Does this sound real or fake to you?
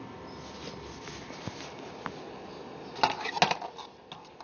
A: real